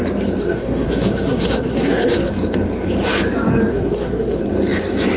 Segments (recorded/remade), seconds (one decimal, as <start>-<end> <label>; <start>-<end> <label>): 0.0-0.4 recorded; 0.4-2.3 remade; 2.3-3.7 recorded; 3.7-4.4 remade; 4.4-5.2 recorded